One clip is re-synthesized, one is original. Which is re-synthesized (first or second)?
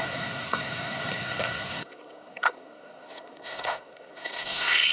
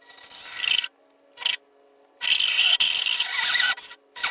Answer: first